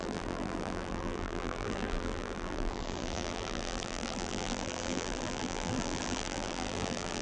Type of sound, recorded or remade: remade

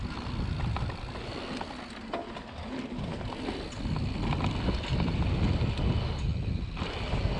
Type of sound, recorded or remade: recorded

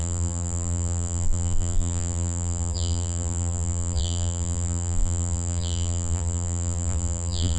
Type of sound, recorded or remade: remade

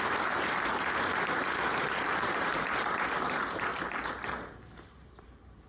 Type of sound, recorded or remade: remade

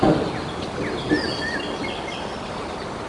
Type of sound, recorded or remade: recorded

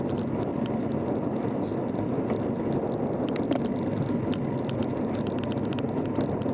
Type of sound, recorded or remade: recorded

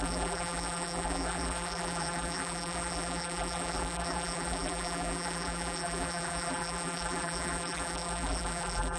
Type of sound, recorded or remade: remade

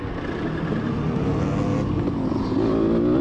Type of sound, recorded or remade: recorded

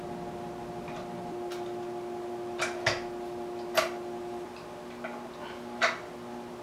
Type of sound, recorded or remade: recorded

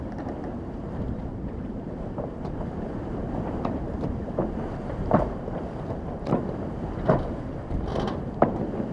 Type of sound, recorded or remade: remade